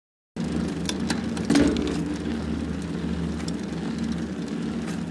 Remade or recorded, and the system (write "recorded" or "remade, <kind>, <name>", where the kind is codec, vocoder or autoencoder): recorded